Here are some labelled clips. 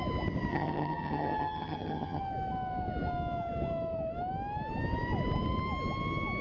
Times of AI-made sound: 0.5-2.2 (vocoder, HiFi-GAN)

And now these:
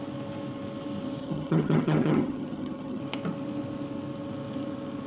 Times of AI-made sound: 1.2-3.0 (vocoder, HiFi-GAN)

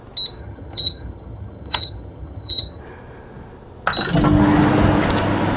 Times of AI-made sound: 0.4-2.8 (vocoder, HiFi-GAN)

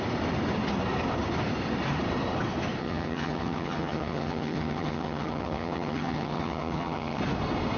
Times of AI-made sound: 2.8-7.2 (vocoder, HiFi-GAN)